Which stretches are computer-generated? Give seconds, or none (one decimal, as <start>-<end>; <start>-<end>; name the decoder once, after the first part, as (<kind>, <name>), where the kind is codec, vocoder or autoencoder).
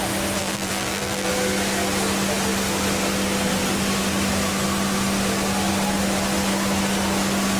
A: 0.4-1.3 (vocoder, BigVGAN v2)